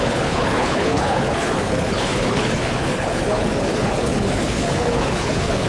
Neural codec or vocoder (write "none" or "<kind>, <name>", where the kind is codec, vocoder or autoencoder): codec, HILCodec